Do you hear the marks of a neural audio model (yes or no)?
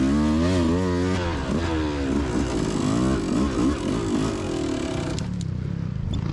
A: no